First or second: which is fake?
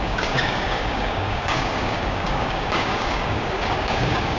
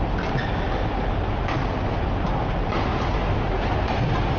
first